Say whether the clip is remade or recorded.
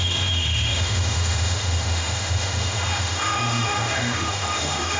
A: remade